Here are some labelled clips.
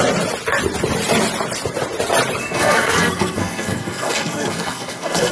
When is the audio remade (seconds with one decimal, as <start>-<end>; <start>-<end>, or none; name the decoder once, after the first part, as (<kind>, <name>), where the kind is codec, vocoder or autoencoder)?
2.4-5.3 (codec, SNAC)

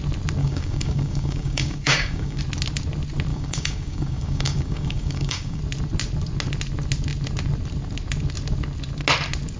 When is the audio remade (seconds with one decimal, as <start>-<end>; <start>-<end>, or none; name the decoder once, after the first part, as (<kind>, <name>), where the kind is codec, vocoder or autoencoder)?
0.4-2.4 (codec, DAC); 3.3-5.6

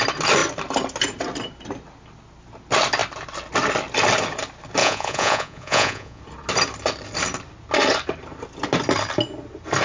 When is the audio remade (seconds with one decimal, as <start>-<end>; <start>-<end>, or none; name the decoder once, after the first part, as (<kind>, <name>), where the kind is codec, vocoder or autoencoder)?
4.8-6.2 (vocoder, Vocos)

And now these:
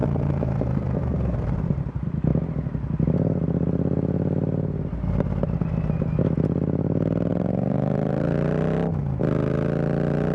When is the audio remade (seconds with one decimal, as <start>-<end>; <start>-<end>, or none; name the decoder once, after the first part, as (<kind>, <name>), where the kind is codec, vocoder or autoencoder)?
0.0-1.9 (vocoder, BigVGAN v2); 7.3-9.0

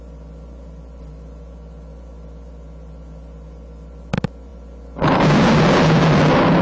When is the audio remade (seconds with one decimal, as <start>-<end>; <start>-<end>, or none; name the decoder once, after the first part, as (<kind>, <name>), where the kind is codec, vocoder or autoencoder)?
none

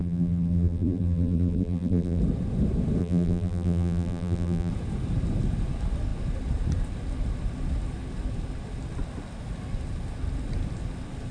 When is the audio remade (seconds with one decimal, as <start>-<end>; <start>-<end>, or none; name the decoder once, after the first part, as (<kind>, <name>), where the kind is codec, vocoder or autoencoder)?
0.0-2.2 (vocoder, BigVGAN v2); 3.0-4.7

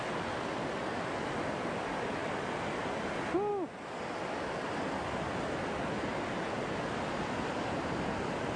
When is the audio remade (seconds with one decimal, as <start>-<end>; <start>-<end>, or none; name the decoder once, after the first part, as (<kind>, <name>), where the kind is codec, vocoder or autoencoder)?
none

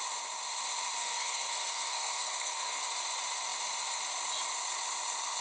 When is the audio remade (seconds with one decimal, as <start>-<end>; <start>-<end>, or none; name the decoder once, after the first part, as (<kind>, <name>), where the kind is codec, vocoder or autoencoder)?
1.0-2.8 (codec, SNAC)